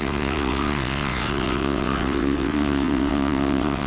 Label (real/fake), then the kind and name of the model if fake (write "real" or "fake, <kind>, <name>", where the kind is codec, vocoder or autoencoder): fake, vocoder, WaveNeXt